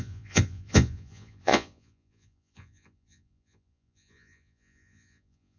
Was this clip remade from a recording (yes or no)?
yes